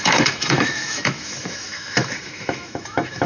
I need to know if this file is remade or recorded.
remade